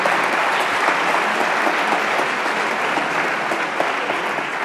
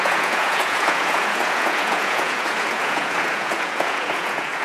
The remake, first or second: second